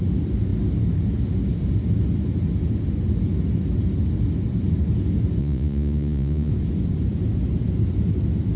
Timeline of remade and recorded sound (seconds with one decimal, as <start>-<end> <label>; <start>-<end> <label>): 0.0-5.4 recorded; 5.4-6.5 remade; 6.5-8.6 recorded